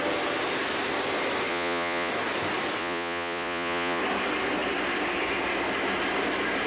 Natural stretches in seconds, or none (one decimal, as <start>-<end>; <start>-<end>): 0.0-1.5; 2.1-2.8; 4.0-6.7